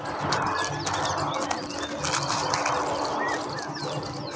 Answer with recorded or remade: recorded